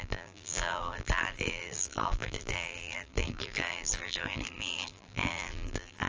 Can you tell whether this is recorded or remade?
remade